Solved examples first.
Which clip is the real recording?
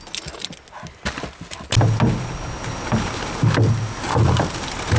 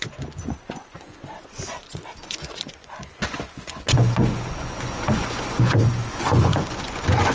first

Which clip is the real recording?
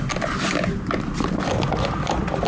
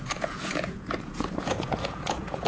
first